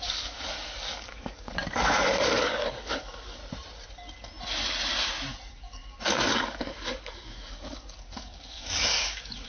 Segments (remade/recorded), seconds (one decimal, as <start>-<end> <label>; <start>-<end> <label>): 0.0-3.4 remade; 3.4-5.5 recorded; 5.5-9.5 remade